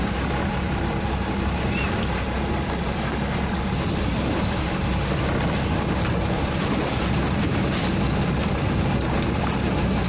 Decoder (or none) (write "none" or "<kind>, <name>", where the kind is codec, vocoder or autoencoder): none